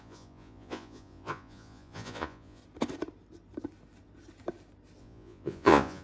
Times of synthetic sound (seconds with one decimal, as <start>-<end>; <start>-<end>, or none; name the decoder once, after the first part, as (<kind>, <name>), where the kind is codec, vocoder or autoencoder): 0.0-2.6 (vocoder, Vocos); 5.0-6.0